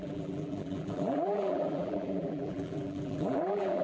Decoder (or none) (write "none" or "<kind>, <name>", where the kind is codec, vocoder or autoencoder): vocoder, BigVGAN v2